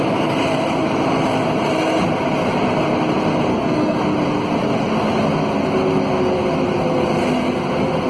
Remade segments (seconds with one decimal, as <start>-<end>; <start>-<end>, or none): 3.5-4.0